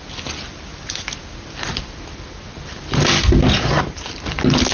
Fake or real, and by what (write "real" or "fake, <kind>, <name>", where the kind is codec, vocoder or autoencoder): real